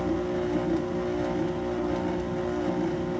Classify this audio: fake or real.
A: real